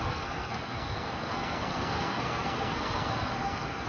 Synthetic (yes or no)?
yes